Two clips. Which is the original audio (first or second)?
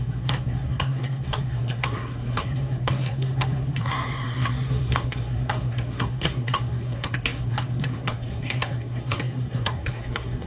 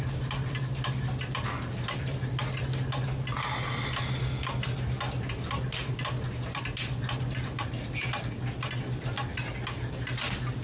second